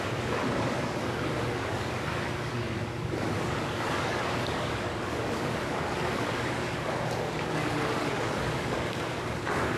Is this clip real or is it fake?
fake